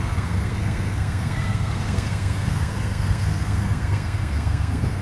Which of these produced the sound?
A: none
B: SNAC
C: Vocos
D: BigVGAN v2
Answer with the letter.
B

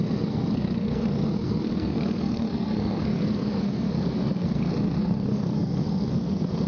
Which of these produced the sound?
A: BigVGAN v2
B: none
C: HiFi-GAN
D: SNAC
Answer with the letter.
D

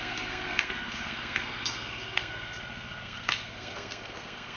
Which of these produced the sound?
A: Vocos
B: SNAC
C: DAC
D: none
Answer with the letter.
B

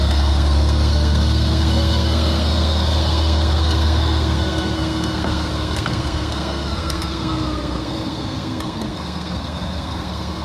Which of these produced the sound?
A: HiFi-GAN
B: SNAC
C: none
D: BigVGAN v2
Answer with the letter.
B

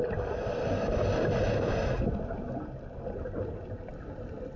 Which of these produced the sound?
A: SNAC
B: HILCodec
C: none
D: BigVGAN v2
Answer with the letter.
C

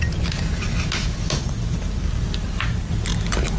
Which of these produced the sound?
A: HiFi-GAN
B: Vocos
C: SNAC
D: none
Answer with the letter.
D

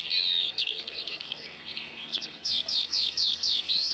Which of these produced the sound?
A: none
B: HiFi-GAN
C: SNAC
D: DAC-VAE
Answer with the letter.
C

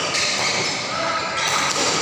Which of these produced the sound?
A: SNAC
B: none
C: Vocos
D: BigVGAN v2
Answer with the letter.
B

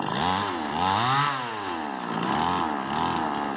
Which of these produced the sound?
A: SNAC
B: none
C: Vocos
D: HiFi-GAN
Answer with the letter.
B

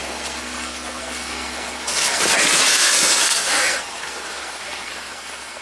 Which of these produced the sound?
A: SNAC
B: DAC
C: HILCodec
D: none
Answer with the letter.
A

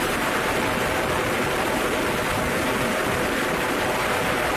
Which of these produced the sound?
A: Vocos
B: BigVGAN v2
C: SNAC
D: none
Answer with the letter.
D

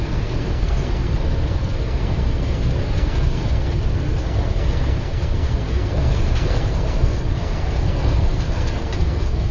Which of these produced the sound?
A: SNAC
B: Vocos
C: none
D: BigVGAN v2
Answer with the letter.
A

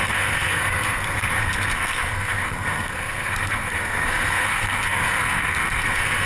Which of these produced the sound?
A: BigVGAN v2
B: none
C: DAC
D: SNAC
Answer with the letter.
D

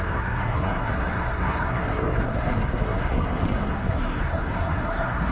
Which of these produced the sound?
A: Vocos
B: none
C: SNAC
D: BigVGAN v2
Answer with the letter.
C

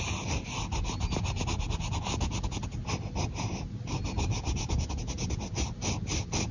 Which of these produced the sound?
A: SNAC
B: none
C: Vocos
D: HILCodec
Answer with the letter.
B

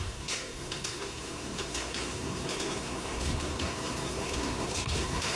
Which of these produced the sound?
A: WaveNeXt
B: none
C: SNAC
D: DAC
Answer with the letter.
C